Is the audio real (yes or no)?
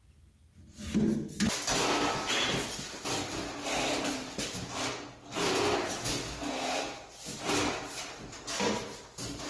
yes